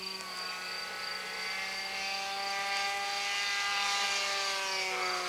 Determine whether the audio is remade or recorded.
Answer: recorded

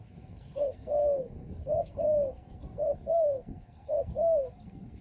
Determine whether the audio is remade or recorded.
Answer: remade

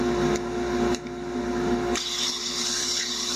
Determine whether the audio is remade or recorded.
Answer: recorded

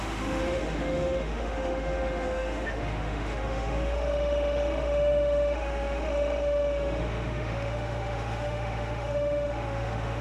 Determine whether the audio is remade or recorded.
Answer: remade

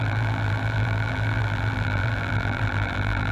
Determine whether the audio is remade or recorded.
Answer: remade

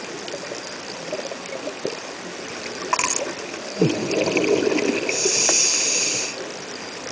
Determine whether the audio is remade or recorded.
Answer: recorded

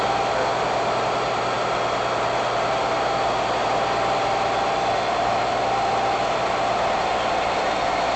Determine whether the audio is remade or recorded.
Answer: recorded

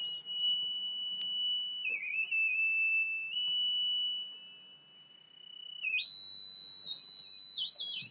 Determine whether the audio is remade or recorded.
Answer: recorded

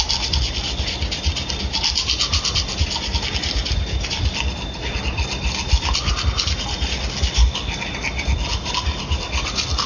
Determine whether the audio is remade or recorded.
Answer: recorded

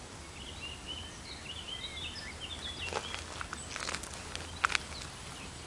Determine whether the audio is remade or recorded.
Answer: recorded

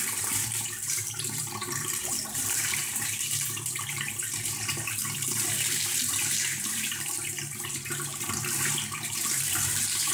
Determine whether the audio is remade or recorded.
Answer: remade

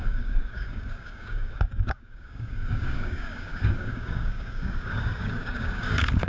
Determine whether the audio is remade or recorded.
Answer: remade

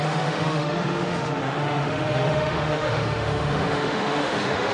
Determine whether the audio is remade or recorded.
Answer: remade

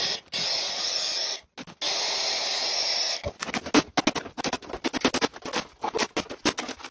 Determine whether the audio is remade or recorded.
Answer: recorded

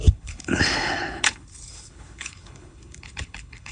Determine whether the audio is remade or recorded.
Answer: remade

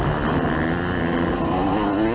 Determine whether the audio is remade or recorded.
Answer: recorded